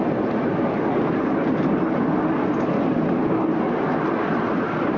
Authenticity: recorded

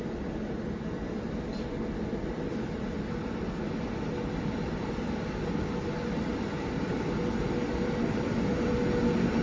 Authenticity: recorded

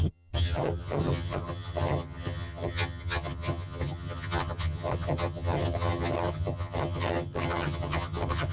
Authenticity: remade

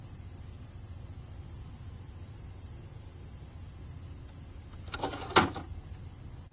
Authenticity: recorded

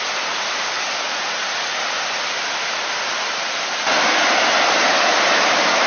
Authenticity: recorded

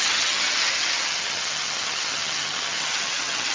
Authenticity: remade